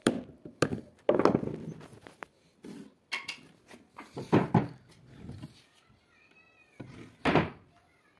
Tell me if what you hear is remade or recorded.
recorded